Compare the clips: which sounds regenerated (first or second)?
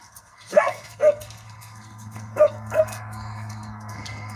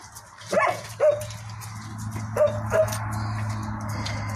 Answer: first